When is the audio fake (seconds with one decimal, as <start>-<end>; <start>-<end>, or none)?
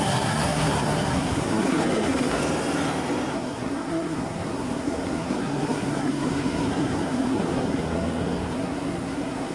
0.0-2.4; 3.3-9.5